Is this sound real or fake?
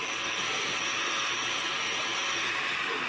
real